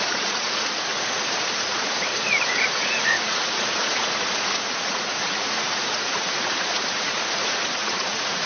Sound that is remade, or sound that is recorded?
remade